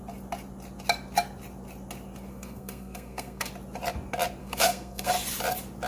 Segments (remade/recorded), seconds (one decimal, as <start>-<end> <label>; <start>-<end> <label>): 0.0-2.3 recorded; 2.3-3.5 remade; 3.5-4.4 recorded; 4.4-5.1 remade; 5.1-5.9 recorded